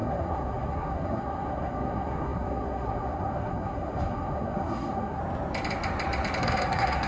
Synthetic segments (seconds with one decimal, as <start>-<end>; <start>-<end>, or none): 0.0-5.2; 6.4-7.1